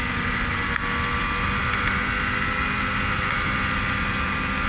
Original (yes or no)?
yes